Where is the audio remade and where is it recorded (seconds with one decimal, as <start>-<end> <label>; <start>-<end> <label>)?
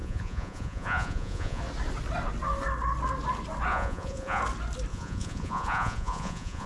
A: 0.0-1.6 remade; 1.6-3.7 recorded; 3.7-4.4 remade; 4.4-4.9 recorded; 4.9-6.7 remade